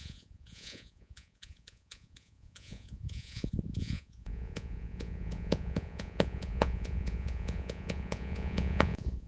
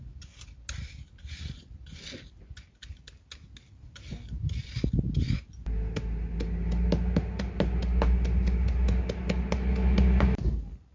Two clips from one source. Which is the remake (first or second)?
first